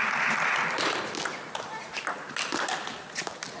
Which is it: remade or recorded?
recorded